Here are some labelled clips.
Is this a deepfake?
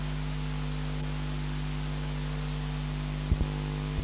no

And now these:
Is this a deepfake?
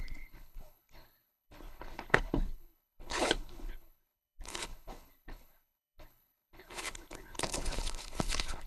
yes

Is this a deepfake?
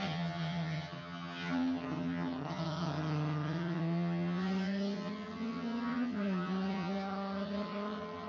yes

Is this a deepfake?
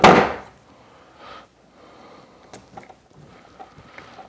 no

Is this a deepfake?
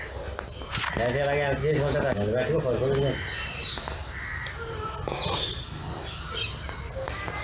no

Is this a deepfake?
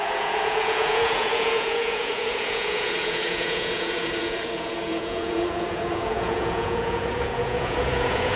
yes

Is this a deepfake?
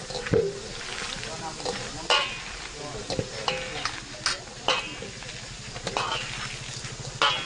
no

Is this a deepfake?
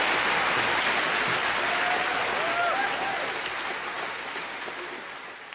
no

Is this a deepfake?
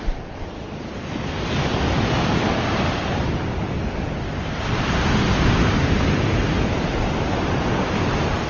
no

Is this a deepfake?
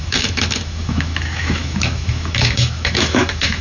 yes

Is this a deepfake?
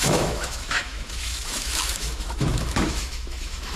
yes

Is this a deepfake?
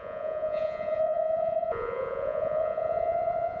yes